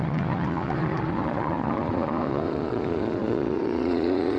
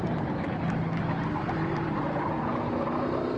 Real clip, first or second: second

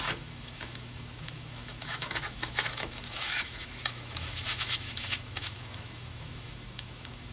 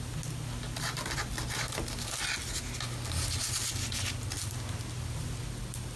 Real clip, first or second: second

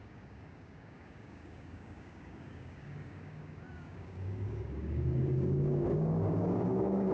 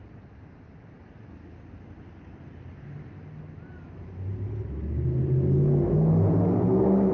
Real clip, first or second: second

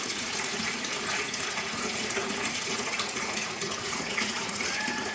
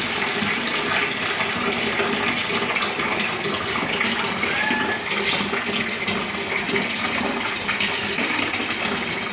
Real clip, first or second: second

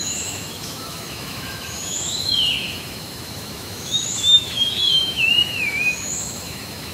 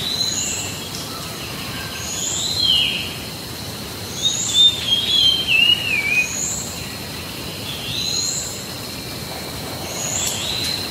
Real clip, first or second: second